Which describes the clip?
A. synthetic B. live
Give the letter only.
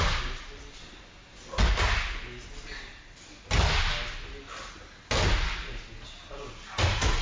B